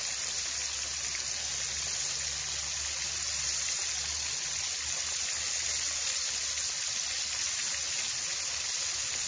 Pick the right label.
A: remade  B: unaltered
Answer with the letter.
B